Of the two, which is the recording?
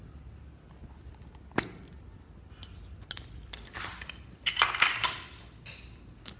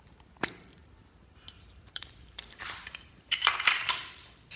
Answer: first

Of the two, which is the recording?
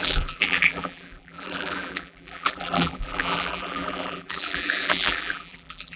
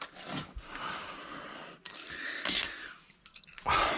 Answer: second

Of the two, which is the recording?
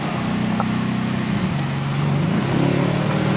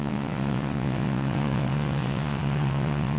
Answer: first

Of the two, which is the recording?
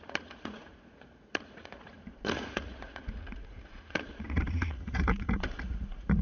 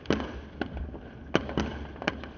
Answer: second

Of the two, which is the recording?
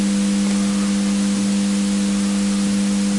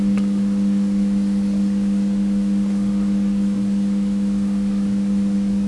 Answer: first